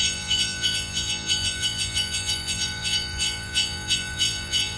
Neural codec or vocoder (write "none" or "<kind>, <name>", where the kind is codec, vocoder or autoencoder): vocoder, Vocos